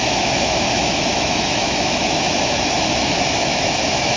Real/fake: fake